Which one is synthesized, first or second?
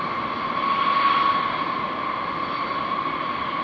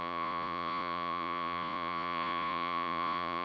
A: second